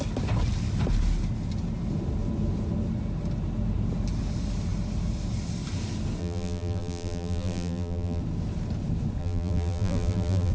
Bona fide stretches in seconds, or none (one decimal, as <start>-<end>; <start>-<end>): 0.0-6.2; 8.2-9.2